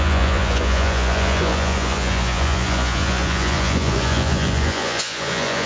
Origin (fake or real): fake